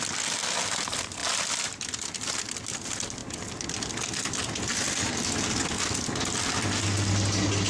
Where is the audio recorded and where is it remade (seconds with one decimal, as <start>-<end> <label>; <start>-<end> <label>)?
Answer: 0.0-7.7 recorded